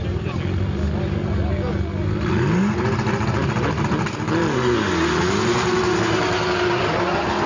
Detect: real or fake real